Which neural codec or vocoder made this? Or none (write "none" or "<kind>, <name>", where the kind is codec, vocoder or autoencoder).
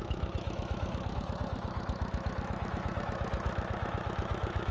autoencoder, DAC-VAE